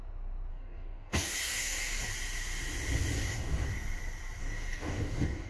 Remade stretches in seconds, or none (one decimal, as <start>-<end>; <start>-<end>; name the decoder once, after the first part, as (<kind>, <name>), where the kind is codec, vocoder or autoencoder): 0.5-2.0 (codec, DAC); 3.1-3.7; 4.4-5.5